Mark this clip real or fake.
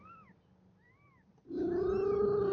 real